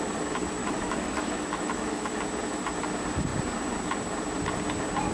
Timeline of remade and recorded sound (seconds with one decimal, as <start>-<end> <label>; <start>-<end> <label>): 0.0-0.6 recorded; 0.6-2.2 remade; 2.2-5.1 recorded